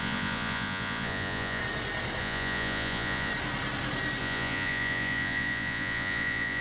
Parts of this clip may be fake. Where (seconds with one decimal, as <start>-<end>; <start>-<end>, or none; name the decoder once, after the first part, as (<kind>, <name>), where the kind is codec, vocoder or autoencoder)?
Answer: 0.0-1.6 (vocoder, Vocos); 2.2-3.3; 4.2-6.6

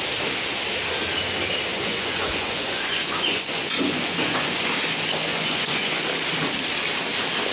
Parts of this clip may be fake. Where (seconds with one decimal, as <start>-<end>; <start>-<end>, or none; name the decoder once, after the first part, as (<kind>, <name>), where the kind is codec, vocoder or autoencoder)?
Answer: 1.7-4.7 (vocoder, Vocos); 5.3-6.0

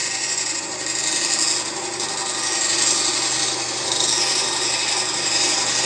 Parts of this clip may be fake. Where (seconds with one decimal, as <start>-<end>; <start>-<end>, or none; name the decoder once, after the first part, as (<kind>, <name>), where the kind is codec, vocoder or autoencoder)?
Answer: 0.0-0.6 (vocoder, Vocos)

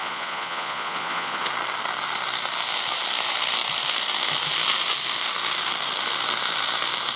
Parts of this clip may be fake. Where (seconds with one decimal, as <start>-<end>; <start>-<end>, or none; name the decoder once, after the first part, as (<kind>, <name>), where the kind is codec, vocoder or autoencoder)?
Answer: 0.0-1.5 (vocoder, Vocos)

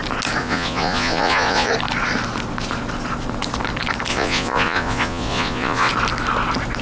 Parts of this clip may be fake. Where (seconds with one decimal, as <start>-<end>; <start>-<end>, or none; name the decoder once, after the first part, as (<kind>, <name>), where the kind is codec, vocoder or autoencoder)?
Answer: 0.4-1.7 (vocoder, Vocos); 4.1-5.9